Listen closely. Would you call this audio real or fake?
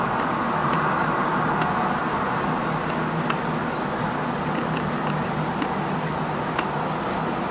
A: real